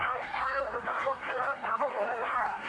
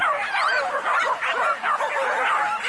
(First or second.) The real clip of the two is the second